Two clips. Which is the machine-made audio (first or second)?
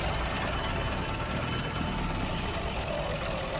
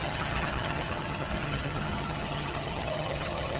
second